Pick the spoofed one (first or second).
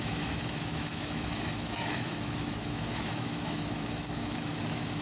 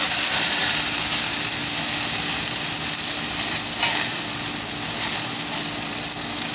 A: first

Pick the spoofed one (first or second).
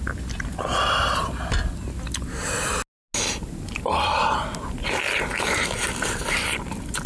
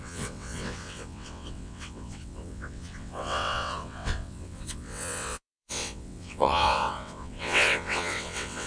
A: second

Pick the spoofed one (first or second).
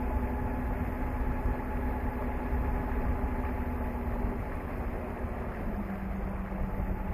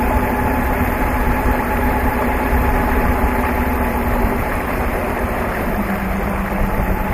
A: second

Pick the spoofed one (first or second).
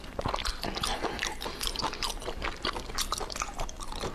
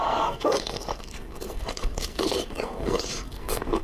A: second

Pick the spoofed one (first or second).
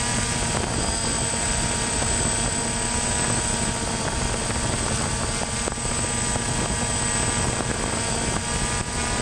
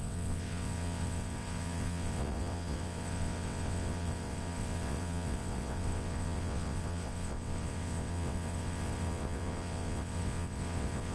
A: second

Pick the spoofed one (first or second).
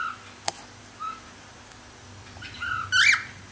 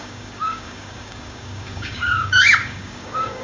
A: second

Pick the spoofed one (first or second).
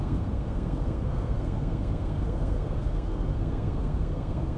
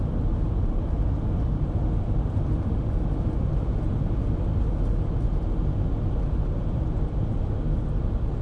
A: first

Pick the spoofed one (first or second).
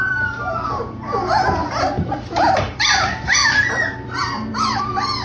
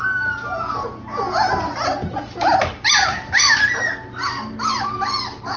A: first